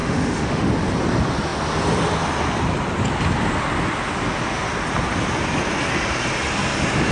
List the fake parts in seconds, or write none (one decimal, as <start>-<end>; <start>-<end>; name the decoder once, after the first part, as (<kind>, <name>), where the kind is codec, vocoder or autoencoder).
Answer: 0.0-0.7 (autoencoder, DAC-VAE)

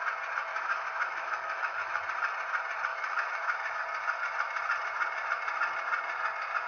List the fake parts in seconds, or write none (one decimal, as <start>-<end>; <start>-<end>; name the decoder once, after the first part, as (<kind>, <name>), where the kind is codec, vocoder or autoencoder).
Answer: 0.5-2.0 (autoencoder, DAC-VAE); 2.9-3.8

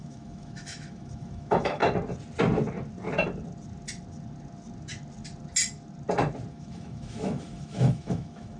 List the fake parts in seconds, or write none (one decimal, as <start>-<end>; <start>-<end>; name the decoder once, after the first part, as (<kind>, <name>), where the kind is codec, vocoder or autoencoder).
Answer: 0.0-1.8 (autoencoder, DAC-VAE); 6.5-8.6

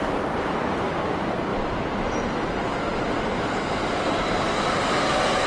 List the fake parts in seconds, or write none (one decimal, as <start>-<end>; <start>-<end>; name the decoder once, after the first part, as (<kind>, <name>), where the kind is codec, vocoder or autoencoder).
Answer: none

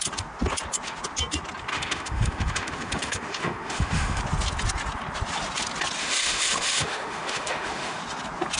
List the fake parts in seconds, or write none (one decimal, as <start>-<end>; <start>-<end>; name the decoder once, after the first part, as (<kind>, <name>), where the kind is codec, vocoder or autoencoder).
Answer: 1.7-4.2 (autoencoder, DAC-VAE); 6.0-8.0

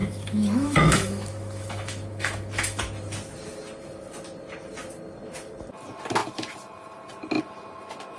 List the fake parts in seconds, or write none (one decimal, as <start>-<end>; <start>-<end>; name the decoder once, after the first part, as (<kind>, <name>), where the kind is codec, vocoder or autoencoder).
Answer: 0.0-2.8 (autoencoder, DAC-VAE)

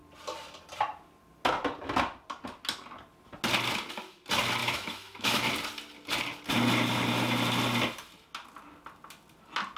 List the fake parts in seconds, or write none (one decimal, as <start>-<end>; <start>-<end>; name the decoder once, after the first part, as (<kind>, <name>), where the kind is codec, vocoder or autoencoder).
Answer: 4.6-5.5 (autoencoder, DAC-VAE)